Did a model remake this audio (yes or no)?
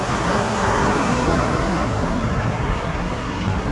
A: yes